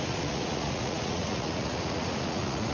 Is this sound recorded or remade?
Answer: remade